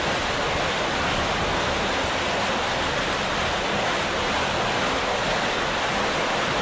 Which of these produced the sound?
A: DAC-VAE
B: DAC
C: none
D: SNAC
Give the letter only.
C